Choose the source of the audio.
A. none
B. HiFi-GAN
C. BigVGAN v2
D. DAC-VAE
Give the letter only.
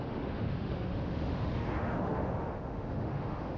D